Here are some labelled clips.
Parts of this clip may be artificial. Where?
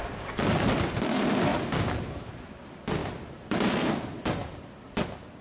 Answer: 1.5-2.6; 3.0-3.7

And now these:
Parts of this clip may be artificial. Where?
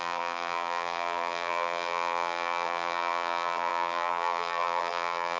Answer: 0.0-5.4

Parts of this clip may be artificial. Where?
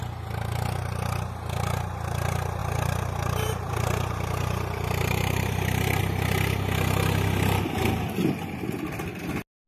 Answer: 2.6-6.0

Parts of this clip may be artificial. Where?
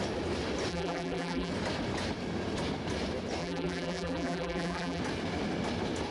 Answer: 0.7-1.5; 3.4-5.0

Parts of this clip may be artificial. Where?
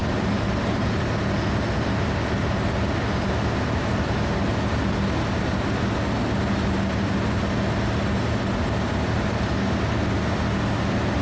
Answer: 0.0-1.0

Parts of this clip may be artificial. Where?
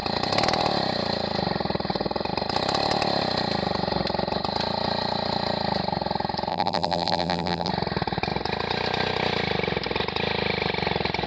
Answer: 6.5-7.7